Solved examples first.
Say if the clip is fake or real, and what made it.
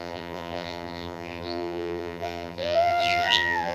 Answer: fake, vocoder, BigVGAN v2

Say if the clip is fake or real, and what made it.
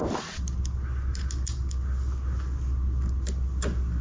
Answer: real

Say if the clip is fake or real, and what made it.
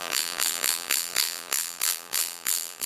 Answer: fake, vocoder, BigVGAN v2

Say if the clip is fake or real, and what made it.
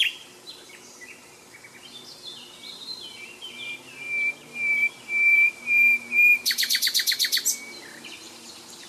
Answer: real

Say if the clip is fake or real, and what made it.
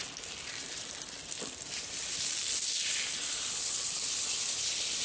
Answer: fake, vocoder, BigVGAN v2